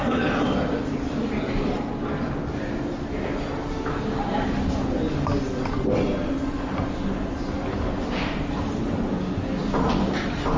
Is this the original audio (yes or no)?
yes